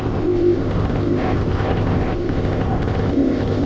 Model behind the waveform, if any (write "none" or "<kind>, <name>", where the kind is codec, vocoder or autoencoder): codec, ZipCodec